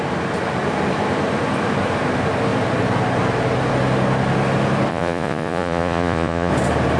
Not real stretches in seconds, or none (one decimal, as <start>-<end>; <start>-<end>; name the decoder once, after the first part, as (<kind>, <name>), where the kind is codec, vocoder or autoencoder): 4.9-6.5 (vocoder, Vocos)